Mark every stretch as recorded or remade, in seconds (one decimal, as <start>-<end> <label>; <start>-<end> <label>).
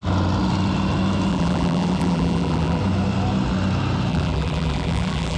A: 0.0-1.3 recorded; 1.3-2.8 remade; 2.8-4.1 recorded; 4.1-5.4 remade